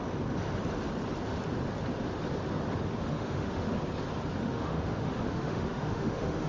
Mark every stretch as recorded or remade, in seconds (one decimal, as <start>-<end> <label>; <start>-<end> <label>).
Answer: 0.0-3.1 recorded; 3.1-3.7 remade; 3.7-4.4 recorded; 4.4-6.5 remade